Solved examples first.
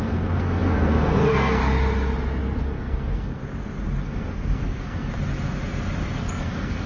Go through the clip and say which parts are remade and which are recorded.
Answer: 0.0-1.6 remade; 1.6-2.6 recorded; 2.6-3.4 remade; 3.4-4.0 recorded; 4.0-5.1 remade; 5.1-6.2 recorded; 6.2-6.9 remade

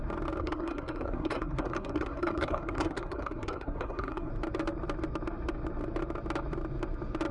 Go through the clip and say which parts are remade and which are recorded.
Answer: 0.0-0.4 recorded; 0.4-4.3 remade; 4.3-7.3 recorded

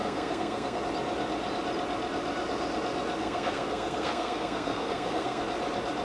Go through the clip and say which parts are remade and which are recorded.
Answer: 0.0-0.8 remade; 0.8-3.2 recorded; 3.2-5.4 remade; 5.4-6.0 recorded

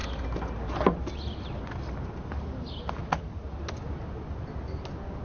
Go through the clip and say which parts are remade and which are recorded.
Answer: 0.0-5.2 recorded

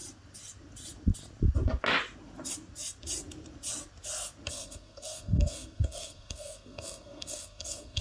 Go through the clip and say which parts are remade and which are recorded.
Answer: 0.0-4.5 recorded; 4.5-8.0 remade